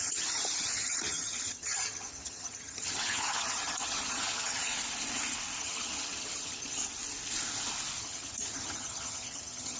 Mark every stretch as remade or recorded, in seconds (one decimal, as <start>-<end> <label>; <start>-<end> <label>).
0.0-4.7 remade; 4.7-5.6 recorded; 5.6-6.8 remade; 6.8-8.0 recorded; 8.0-9.8 remade